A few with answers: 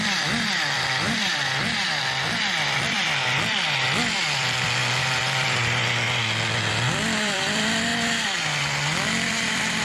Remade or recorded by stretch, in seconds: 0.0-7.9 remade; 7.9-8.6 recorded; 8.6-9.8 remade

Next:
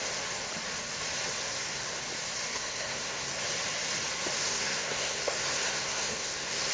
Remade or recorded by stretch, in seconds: 0.0-1.5 recorded; 1.5-2.0 remade; 2.0-2.5 recorded; 2.5-3.4 remade; 3.4-4.4 recorded; 4.4-6.7 remade

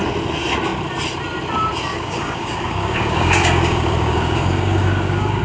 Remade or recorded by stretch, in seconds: 0.0-1.9 recorded; 1.9-5.4 remade

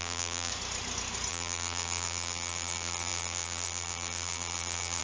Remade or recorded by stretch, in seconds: 0.0-0.5 remade; 0.5-1.3 recorded; 1.3-5.0 remade

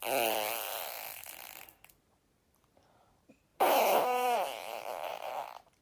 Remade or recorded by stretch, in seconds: 0.0-3.5 recorded; 3.5-5.3 remade; 5.3-5.8 recorded

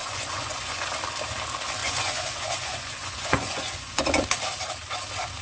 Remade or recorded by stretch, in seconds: 0.0-0.9 remade; 0.9-1.8 recorded; 1.8-4.0 remade; 4.0-5.4 recorded

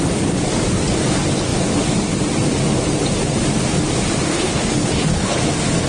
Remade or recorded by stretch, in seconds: 0.0-4.3 recorded; 4.3-5.4 remade; 5.4-5.9 recorded